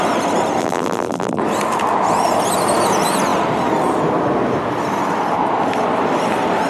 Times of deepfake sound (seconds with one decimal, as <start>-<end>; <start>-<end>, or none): 0.6-1.4